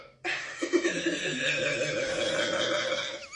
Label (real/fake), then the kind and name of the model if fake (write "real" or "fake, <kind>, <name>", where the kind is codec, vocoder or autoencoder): real